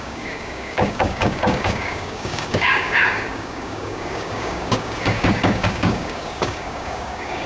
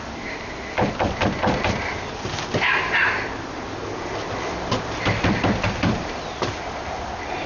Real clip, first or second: second